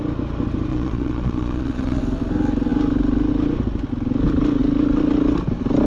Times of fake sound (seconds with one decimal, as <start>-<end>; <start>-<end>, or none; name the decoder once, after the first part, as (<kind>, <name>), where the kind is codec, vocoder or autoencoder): 0.7-2.0 (vocoder, Vocos)